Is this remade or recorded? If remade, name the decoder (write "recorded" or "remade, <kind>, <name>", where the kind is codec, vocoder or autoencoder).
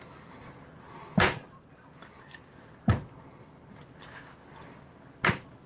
recorded